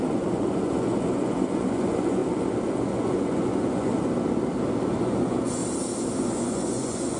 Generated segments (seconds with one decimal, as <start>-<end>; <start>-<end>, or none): 0.0-2.2; 2.7-3.9; 5.0-5.6; 6.2-7.2